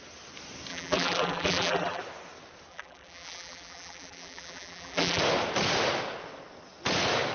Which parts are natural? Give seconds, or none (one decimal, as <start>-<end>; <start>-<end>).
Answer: 0.0-0.7; 2.0-2.7; 5.2-7.3